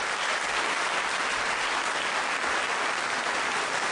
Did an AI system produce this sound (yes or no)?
yes